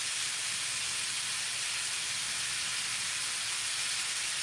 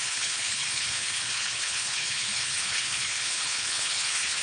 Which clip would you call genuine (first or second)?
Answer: first